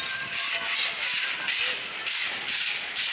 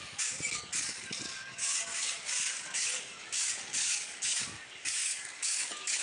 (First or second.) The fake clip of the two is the second